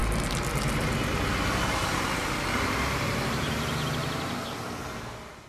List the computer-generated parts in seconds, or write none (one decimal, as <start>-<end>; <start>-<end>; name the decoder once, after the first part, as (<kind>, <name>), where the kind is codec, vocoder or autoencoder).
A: none